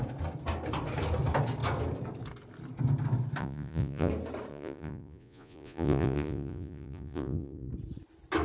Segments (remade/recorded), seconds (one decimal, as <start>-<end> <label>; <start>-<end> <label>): 0.0-3.4 recorded; 3.4-4.1 remade; 4.1-4.5 recorded; 4.5-7.7 remade; 7.7-8.4 recorded